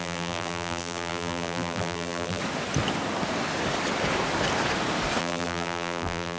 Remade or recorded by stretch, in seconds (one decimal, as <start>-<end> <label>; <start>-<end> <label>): 0.0-2.4 remade; 2.4-5.2 recorded; 5.2-6.4 remade